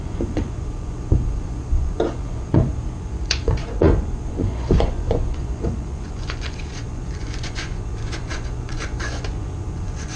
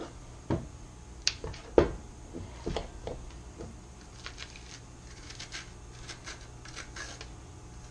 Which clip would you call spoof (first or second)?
first